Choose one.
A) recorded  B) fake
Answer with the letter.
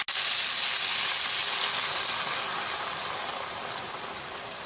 A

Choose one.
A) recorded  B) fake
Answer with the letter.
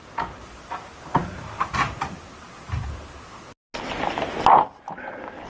A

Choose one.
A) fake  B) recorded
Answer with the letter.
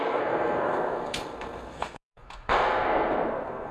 A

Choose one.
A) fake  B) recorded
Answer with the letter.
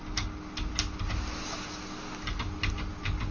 B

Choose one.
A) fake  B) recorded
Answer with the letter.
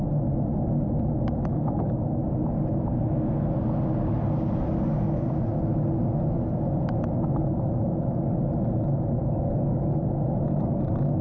B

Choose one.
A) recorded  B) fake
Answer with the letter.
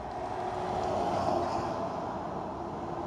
B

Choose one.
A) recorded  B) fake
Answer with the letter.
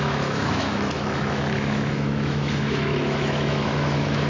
B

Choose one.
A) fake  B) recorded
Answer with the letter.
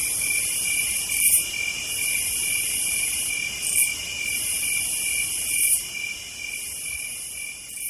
B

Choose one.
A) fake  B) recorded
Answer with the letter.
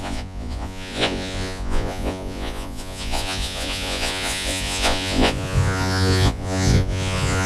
A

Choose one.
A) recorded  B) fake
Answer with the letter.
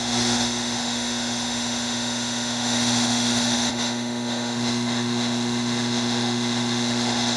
B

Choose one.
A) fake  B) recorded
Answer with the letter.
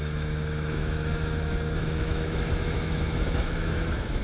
A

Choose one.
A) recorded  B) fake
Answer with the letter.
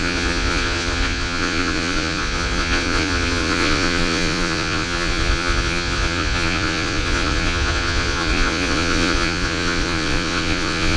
B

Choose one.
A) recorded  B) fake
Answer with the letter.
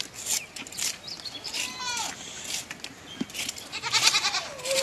A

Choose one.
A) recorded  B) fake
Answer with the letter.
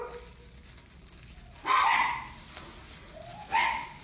A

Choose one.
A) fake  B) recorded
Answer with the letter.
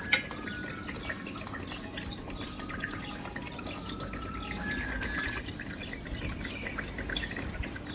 B